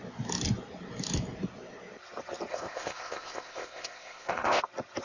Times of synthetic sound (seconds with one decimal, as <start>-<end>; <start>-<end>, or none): 2.5-4.6